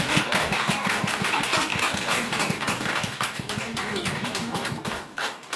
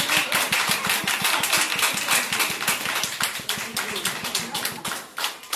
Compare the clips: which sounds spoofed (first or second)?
first